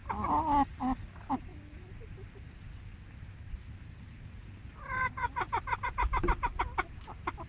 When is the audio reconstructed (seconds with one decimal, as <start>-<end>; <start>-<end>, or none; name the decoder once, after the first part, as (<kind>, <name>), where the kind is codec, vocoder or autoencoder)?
1.5-2.6 (vocoder, BigVGAN v2)